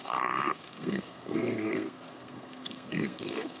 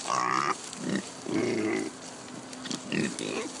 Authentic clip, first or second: second